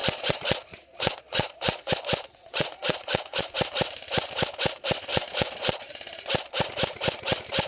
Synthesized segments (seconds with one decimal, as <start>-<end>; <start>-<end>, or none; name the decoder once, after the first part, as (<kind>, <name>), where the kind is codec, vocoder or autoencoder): 0.0-1.9 (vocoder, Vocos); 2.4-3.4; 5.1-5.9